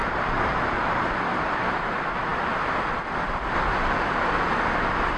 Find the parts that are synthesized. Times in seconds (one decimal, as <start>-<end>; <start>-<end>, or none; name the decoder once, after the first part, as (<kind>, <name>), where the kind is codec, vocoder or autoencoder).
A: 0.0-0.8 (vocoder, BigVGAN v2)